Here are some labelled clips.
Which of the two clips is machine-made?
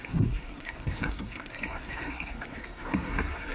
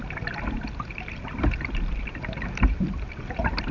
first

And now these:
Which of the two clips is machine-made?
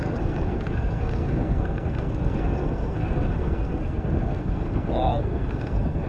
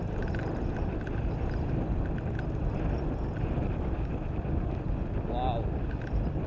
first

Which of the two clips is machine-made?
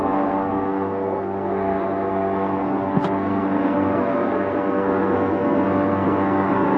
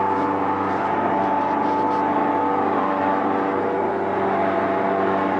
first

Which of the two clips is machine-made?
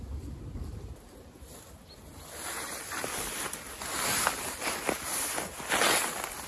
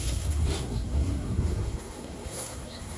second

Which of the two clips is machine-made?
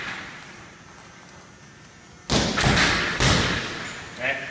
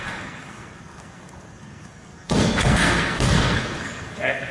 second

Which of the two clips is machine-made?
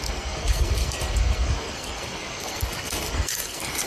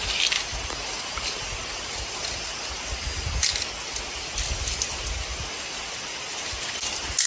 first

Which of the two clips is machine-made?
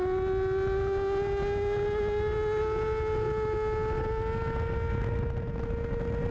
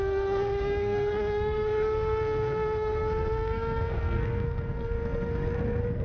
second